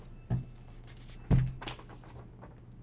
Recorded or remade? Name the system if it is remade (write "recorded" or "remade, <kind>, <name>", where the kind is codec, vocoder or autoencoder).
recorded